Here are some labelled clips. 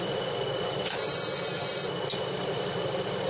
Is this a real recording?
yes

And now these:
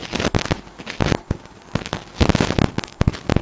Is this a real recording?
yes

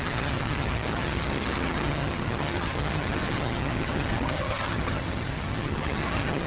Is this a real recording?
no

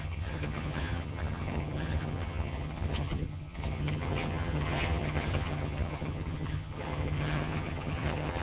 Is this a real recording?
no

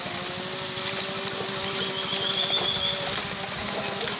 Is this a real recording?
yes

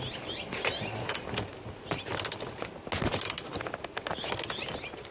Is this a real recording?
yes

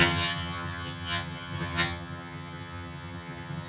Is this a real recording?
no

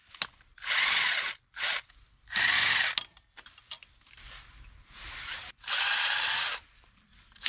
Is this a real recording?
yes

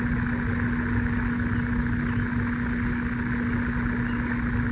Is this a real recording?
yes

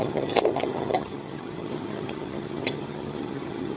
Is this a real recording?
no